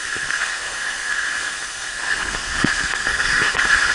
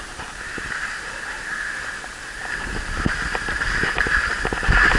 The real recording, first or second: second